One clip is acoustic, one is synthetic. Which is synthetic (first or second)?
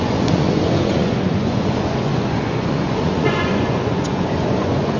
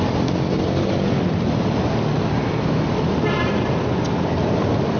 first